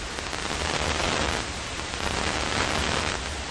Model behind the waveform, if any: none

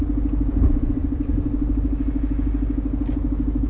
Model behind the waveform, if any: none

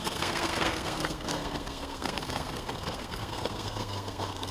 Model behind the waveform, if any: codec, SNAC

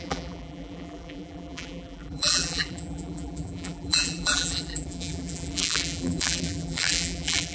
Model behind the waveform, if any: vocoder, BigVGAN v2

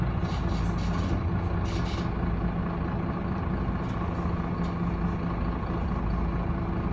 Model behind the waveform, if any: none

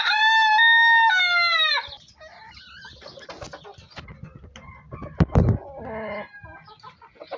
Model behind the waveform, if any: none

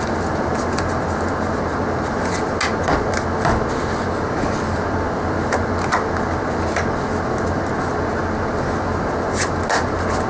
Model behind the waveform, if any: none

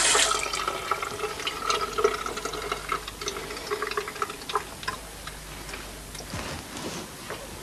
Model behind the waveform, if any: none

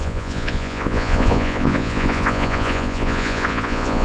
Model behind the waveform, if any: vocoder, Vocos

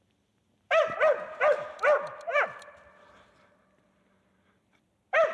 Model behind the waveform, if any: none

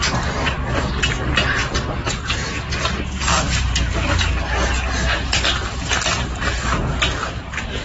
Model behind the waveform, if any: none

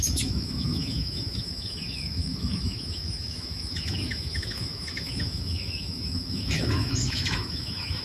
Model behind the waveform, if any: autoencoder, DAC-VAE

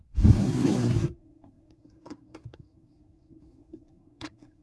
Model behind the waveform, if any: codec, SNAC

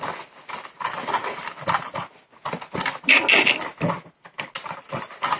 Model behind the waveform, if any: none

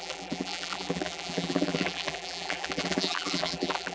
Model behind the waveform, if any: vocoder, BigVGAN v2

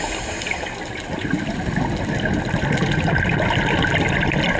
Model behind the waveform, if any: none